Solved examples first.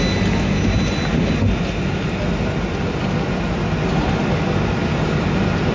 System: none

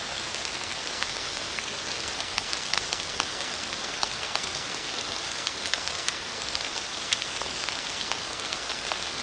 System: codec, SNAC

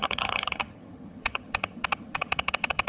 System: vocoder, HiFi-GAN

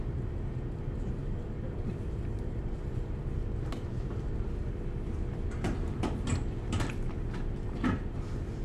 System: vocoder, BigVGAN v2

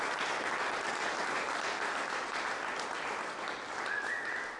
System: none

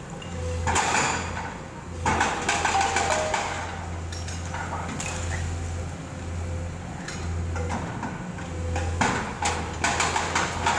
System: none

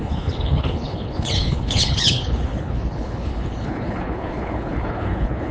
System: codec, HILCodec